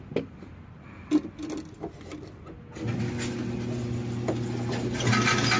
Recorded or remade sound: recorded